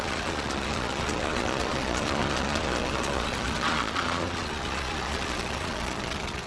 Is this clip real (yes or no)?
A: no